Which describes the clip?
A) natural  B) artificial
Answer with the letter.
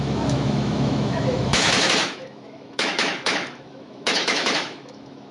B